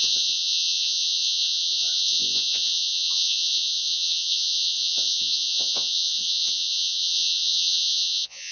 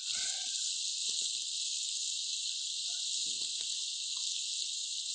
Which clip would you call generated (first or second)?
first